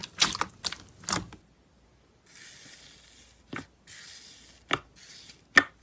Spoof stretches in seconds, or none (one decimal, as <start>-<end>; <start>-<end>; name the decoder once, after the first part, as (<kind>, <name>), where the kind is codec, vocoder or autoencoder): none

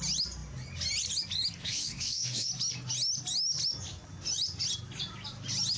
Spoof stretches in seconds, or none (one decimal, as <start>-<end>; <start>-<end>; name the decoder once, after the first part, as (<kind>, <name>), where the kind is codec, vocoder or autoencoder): 1.6-2.5 (autoencoder, DAC-VAE)

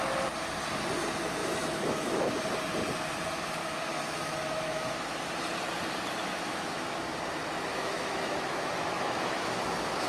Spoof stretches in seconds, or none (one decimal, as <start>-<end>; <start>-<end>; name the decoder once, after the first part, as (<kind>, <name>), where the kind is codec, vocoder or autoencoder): 1.4-2.2 (autoencoder, DAC-VAE); 3.6-4.8; 6.2-7.0; 7.7-10.1

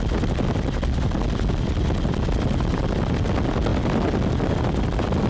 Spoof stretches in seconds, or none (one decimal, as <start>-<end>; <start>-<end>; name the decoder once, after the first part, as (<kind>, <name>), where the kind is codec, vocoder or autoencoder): none

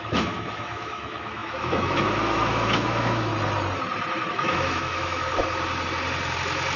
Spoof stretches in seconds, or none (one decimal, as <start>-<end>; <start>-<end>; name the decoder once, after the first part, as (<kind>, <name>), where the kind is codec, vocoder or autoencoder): 0.0-3.3 (autoencoder, DAC-VAE); 4.3-5.3

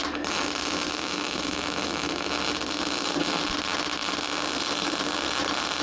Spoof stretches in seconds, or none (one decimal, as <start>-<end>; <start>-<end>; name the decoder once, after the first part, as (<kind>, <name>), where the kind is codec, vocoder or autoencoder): 0.9-2.3 (autoencoder, DAC-VAE)

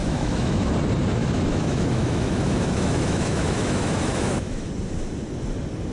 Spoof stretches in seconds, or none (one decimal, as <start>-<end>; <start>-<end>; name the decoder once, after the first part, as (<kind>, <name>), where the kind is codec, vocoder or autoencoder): 0.0-0.7 (autoencoder, DAC-VAE); 1.2-4.7

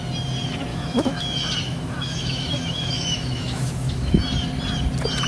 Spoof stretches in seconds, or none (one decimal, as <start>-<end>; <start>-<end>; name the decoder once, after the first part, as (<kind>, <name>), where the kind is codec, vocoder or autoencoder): 0.7-1.2 (autoencoder, DAC-VAE); 1.7-4.2